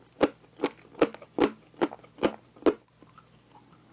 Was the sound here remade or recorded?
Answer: recorded